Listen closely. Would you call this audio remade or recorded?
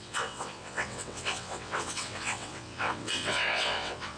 remade